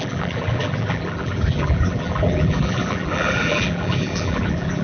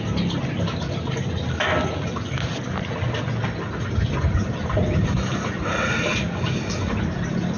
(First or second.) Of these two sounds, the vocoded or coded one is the first